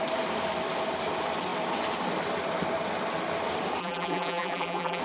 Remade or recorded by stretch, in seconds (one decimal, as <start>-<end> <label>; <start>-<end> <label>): 0.0-3.8 recorded; 3.8-5.0 remade